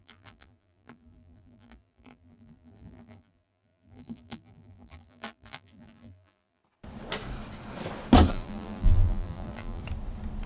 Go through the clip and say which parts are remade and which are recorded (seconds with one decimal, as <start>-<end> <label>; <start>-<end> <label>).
0.0-6.6 remade; 6.6-8.3 recorded; 8.3-9.8 remade; 9.8-10.5 recorded